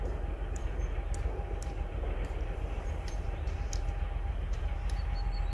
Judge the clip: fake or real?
fake